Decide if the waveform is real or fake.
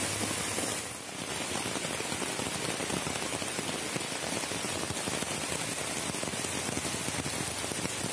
real